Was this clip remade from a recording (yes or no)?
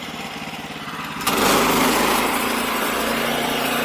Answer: yes